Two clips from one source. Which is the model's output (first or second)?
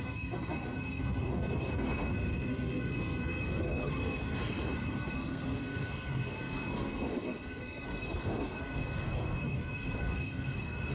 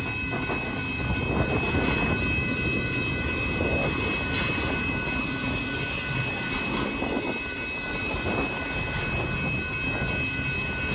first